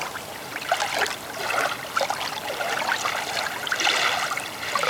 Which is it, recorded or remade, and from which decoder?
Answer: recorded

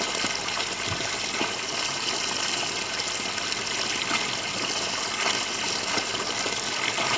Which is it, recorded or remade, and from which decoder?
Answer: recorded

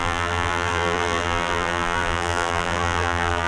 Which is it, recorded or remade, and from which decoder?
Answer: remade, vocoder, BigVGAN v2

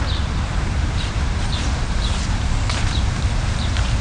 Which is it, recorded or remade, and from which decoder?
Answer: remade, vocoder, BigVGAN v2